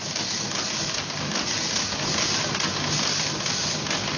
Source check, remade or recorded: recorded